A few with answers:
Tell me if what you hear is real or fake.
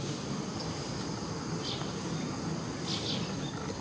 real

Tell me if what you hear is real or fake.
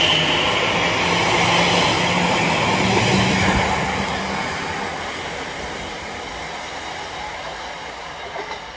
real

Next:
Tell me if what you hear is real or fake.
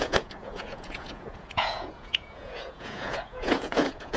fake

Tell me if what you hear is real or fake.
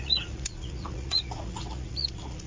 fake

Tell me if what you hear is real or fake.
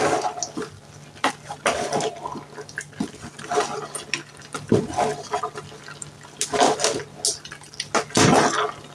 real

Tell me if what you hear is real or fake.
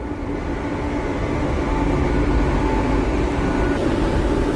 real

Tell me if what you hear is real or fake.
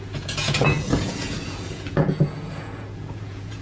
fake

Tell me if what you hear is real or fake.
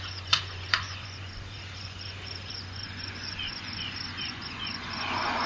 fake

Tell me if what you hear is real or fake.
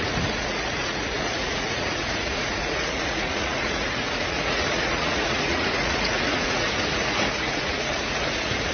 fake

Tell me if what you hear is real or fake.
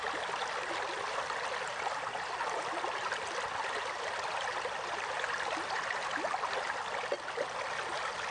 real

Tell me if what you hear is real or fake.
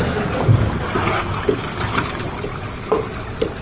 real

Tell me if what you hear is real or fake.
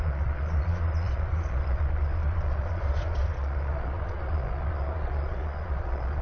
fake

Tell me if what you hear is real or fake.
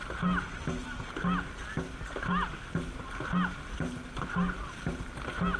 real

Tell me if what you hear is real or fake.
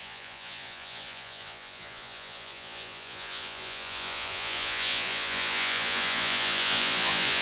fake